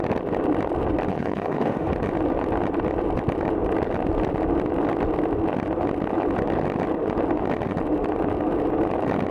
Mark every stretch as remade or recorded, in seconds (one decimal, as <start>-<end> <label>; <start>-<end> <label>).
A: 0.0-1.1 recorded; 1.1-1.9 remade; 1.9-9.3 recorded